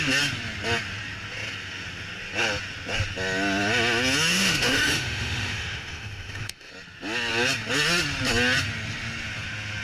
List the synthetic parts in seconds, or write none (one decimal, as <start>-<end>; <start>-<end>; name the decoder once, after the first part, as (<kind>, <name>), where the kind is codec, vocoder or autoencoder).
4.3-6.7 (autoencoder, DAC-VAE)

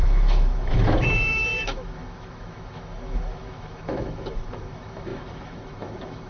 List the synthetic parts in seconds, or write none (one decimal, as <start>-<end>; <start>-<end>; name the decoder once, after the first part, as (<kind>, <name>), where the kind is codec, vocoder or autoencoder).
0.0-6.3 (autoencoder, DAC-VAE)

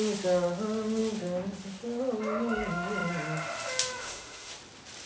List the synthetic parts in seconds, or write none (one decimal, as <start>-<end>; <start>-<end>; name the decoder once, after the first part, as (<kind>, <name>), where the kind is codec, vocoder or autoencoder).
4.0-4.5 (autoencoder, DAC-VAE)

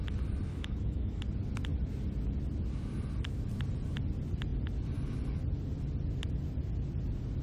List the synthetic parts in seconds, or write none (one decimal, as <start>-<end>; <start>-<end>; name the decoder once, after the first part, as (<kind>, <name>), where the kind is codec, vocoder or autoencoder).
0.5-1.2 (autoencoder, DAC-VAE)

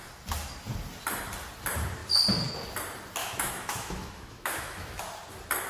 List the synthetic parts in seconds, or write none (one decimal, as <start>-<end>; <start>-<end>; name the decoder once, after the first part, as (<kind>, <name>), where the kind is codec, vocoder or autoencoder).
3.2-5.0 (autoencoder, DAC-VAE)

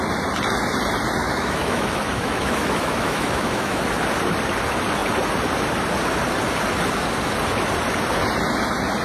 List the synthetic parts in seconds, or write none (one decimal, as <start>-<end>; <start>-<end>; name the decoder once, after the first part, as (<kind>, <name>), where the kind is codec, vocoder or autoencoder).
1.2-3.8 (autoencoder, DAC-VAE)

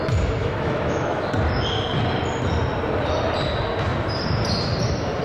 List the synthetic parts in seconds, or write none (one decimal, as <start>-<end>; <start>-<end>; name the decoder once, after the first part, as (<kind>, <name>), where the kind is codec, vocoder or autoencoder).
0.4-1.3 (autoencoder, DAC-VAE)

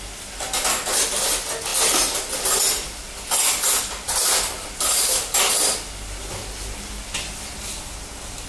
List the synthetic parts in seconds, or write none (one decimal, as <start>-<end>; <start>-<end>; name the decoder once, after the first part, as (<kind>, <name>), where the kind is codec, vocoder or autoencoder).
none